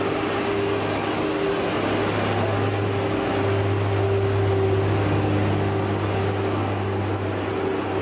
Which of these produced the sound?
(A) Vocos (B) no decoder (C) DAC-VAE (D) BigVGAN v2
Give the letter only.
B